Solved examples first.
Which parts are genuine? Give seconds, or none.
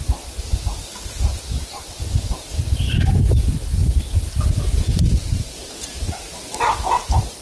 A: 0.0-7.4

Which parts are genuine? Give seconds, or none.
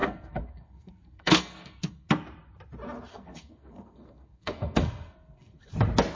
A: 2.1-3.1; 5.7-6.2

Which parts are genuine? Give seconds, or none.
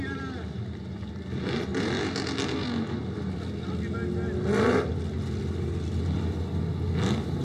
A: 0.0-7.4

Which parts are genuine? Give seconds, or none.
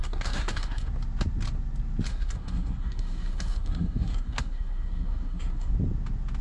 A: 0.9-2.1; 5.7-6.4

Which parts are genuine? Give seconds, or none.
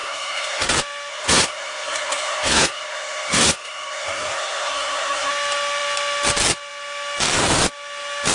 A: 0.7-1.1; 5.3-8.3